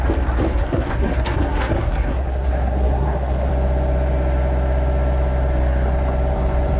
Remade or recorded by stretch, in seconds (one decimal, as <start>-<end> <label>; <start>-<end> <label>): 0.0-0.6 recorded; 0.6-3.5 remade; 3.5-6.8 recorded